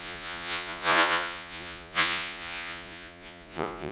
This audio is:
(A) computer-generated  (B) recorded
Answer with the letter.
A